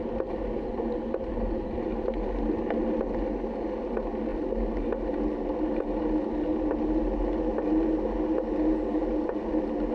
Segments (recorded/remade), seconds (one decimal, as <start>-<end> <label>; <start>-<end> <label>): 0.0-9.9 recorded